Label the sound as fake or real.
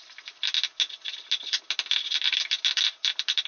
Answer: real